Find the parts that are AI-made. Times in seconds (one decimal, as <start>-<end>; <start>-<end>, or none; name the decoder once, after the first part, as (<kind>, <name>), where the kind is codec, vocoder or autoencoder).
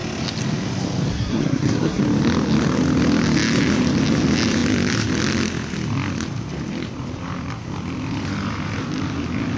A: 1.1-2.0 (codec, SNAC)